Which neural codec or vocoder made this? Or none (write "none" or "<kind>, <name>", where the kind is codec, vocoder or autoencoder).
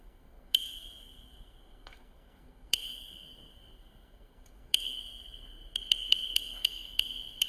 codec, SNAC